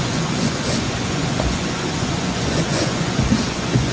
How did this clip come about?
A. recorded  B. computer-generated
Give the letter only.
B